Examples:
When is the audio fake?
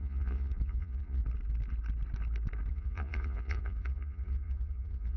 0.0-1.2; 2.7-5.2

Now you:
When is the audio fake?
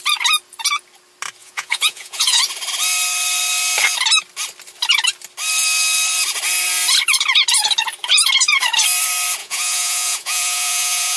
1.4-2.4; 9.4-11.2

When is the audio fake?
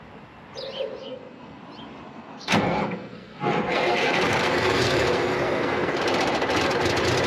1.0-1.6; 2.1-6.0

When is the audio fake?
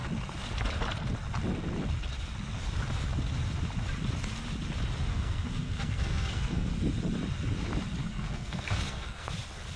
5.1-6.7; 8.0-9.3